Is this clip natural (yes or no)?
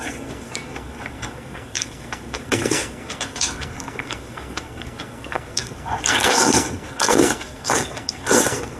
no